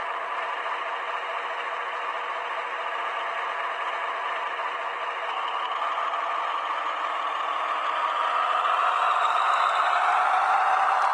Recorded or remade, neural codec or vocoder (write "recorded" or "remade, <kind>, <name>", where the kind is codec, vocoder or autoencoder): recorded